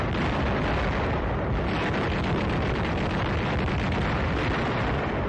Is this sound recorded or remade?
remade